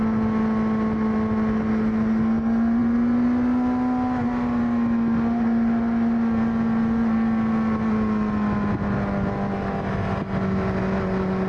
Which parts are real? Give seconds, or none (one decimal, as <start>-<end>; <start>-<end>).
0.0-11.5